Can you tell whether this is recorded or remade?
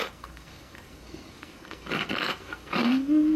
remade